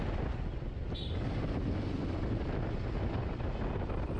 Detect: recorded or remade recorded